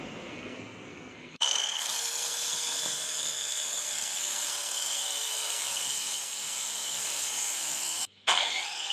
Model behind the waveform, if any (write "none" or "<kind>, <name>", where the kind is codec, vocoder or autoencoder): codec, SNAC